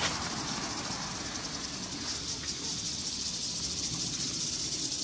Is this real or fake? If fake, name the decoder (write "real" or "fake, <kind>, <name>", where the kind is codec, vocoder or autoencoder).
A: real